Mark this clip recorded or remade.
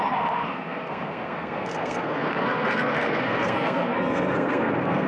remade